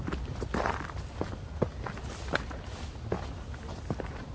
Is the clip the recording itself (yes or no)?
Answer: yes